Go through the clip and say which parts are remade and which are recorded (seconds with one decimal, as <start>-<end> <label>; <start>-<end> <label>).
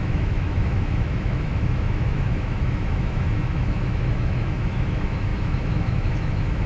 0.0-6.7 remade